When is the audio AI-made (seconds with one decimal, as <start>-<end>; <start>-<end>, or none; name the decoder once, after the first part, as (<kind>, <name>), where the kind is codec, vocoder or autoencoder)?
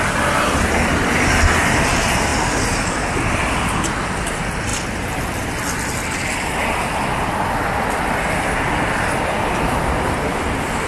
none